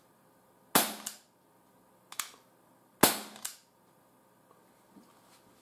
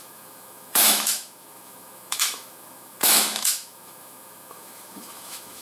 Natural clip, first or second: first